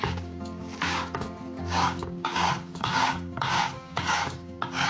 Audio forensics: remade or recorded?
remade